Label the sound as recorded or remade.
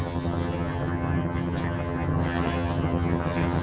remade